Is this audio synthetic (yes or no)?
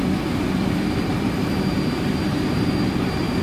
yes